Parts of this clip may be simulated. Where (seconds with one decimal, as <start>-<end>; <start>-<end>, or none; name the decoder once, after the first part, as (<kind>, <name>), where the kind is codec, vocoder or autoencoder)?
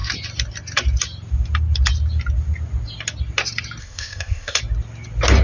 3.8-4.6 (codec, ZipCodec)